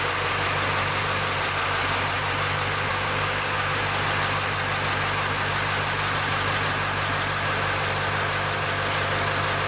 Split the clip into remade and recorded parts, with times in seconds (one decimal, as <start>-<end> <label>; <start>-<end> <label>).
0.0-2.9 recorded; 2.9-3.8 remade; 3.8-9.7 recorded